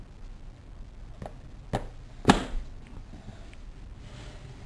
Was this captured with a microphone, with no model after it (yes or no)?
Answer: yes